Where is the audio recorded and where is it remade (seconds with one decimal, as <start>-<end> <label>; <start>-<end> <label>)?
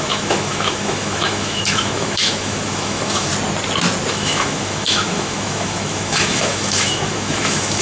0.0-3.3 remade; 3.3-4.1 recorded; 4.1-7.8 remade